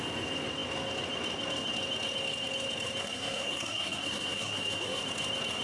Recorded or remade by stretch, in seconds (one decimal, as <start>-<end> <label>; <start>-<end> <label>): 0.0-3.0 recorded; 3.0-5.0 remade; 5.0-5.6 recorded